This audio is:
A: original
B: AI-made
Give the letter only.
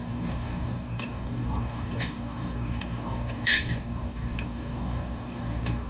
B